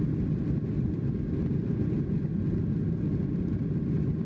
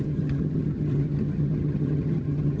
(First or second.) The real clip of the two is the first